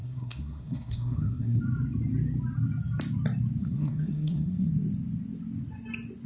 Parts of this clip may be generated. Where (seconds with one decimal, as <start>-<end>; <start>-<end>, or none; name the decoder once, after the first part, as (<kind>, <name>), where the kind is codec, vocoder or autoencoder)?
0.0-1.6 (codec, SNAC); 3.6-4.7